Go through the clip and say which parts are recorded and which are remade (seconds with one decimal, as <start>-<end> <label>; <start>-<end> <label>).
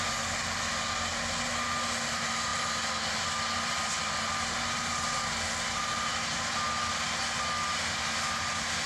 0.0-8.9 recorded